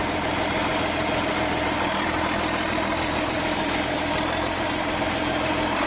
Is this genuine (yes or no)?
yes